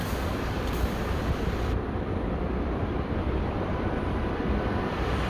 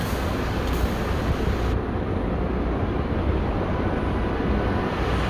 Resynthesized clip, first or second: first